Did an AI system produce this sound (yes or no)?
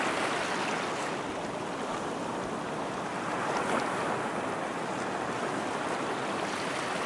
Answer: no